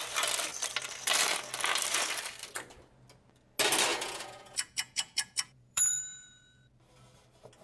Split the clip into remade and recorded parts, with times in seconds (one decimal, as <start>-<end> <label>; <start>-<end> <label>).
0.0-3.9 recorded; 3.9-6.0 remade; 6.0-7.6 recorded